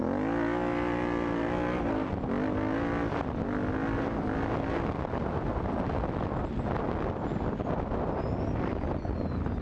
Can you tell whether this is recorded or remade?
recorded